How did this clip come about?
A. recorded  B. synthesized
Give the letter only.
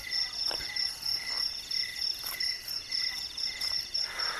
A